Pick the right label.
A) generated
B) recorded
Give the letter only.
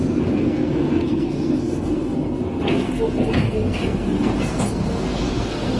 A